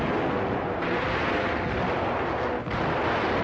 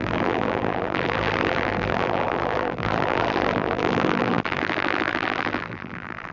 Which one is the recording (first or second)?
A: first